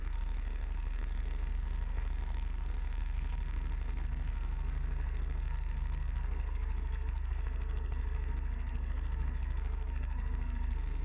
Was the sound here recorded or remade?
remade